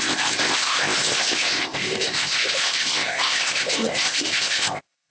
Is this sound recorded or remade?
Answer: remade